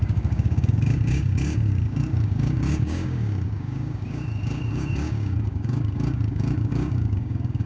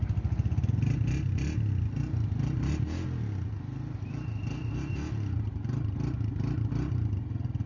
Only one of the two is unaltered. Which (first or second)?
second